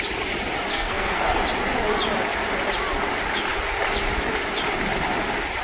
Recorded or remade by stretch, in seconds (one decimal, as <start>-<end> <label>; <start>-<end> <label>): 0.0-0.7 recorded; 0.7-1.3 remade; 1.3-5.6 recorded